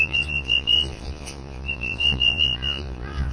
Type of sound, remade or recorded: remade